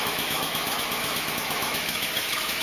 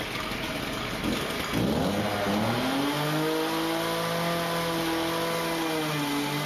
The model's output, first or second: first